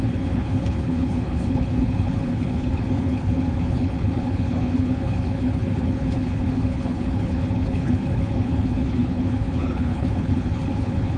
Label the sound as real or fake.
fake